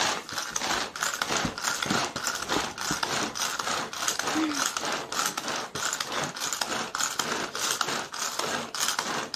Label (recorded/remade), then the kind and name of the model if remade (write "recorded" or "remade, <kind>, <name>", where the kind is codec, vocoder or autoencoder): recorded